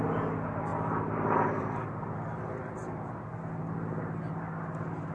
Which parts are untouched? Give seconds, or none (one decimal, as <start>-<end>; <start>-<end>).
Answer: 0.0-5.1